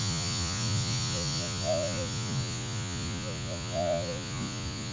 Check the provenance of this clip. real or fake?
fake